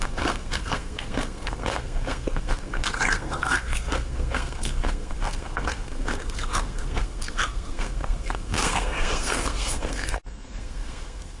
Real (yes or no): no